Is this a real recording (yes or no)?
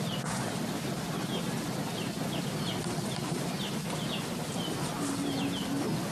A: yes